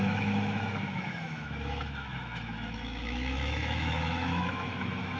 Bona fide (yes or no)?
no